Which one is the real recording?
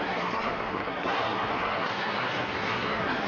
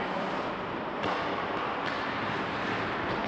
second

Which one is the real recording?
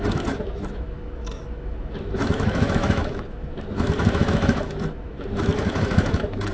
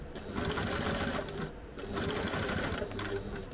second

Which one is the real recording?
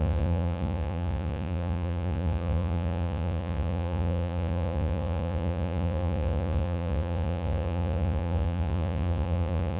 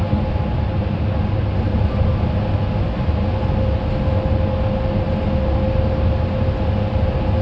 second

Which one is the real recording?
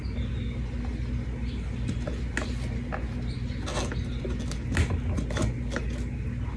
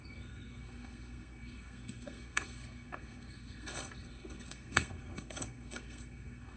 first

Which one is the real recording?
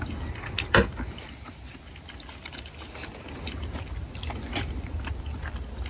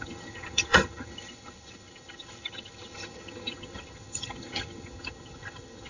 first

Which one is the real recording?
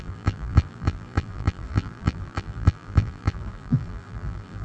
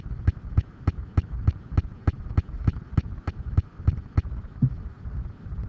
second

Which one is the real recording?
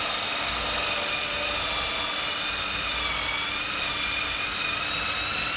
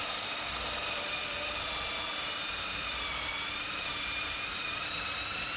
first